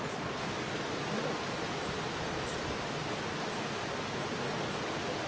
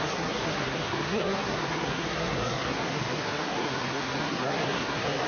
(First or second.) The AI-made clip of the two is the second